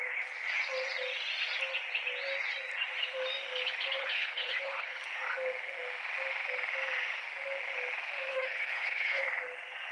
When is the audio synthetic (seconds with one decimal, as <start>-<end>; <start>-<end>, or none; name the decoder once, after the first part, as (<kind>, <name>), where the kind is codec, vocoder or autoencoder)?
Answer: 4.0-5.0 (codec, HILCodec); 8.3-9.2